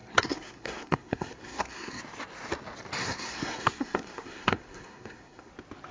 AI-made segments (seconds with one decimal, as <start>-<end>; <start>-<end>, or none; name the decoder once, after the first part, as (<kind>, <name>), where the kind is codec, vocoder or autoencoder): 0.0-2.0 (codec, SNAC); 3.0-5.5